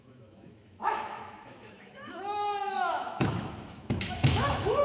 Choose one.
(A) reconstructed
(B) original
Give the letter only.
A